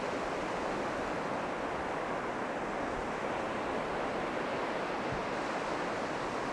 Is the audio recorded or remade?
recorded